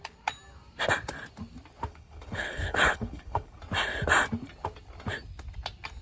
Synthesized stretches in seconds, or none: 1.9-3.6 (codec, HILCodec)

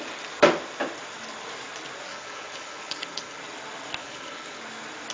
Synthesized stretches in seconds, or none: 2.1-3.4 (codec, HILCodec); 4.0-4.6

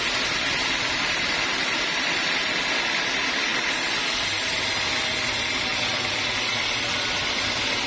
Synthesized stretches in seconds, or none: none

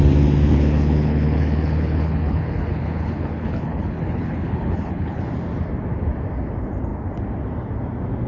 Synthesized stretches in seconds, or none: 0.5-5.2 (codec, HILCodec)